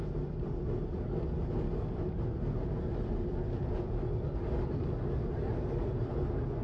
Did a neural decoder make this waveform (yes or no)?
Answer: no